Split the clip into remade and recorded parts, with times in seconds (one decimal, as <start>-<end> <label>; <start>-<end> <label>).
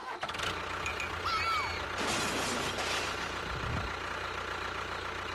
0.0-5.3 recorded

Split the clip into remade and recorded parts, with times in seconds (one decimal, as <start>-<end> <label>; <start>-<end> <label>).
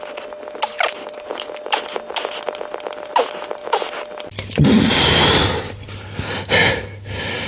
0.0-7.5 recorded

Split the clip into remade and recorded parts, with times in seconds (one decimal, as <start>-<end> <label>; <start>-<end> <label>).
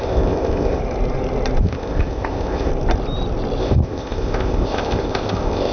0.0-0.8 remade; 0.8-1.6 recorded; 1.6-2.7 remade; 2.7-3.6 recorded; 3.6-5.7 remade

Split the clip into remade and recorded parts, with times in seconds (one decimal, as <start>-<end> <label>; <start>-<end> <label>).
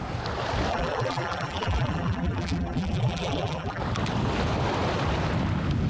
0.0-0.7 recorded; 0.7-3.8 remade; 3.8-5.9 recorded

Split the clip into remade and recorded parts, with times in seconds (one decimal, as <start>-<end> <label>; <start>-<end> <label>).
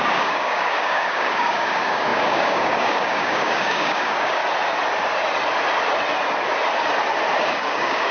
0.0-4.4 remade; 4.4-7.4 recorded; 7.4-8.1 remade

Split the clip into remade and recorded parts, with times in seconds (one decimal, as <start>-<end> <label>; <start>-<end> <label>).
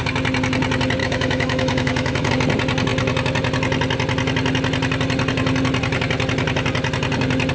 0.0-1.0 recorded; 1.0-2.3 remade; 2.3-7.5 recorded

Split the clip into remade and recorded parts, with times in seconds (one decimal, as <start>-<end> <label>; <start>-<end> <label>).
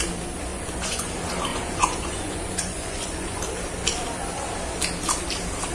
0.0-0.5 recorded; 0.5-1.1 remade; 1.1-1.5 recorded; 1.5-3.4 remade; 3.4-5.7 recorded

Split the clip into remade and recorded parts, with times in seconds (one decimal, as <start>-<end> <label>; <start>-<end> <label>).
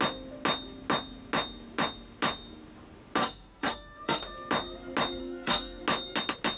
0.0-3.2 recorded; 3.2-4.2 remade; 4.2-5.2 recorded; 5.2-5.8 remade; 5.8-6.6 recorded